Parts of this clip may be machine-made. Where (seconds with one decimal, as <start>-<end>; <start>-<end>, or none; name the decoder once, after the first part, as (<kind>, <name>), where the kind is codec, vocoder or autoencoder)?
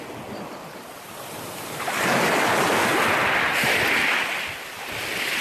0.8-2.2 (vocoder, BigVGAN v2)